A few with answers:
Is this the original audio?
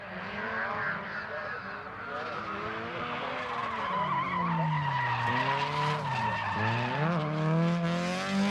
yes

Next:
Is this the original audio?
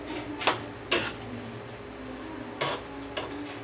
yes